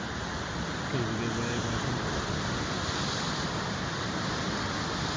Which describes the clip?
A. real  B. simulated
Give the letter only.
A